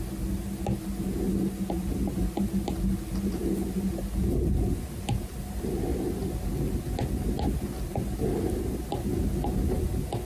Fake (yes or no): no